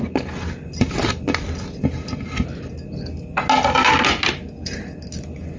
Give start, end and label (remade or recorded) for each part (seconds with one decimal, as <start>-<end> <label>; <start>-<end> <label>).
0.0-5.6 recorded